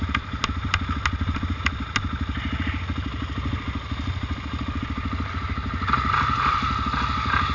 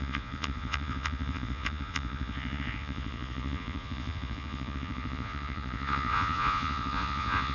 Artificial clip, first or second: second